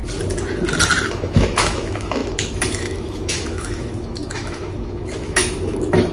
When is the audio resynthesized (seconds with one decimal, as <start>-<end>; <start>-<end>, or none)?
1.1-6.1